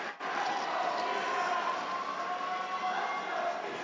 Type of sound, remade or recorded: recorded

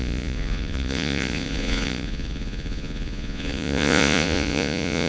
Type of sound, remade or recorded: remade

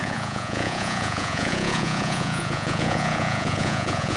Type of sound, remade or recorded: remade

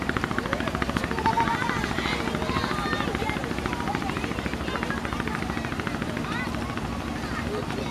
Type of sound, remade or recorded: recorded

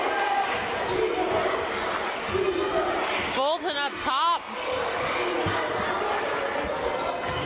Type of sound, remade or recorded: recorded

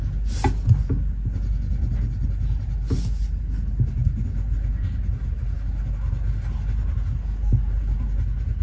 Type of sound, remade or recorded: recorded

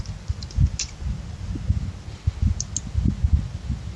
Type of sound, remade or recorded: recorded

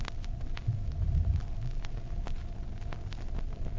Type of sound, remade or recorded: recorded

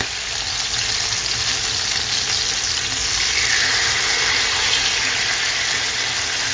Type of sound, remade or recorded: recorded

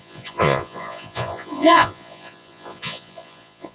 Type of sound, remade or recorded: remade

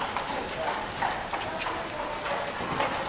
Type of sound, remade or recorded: recorded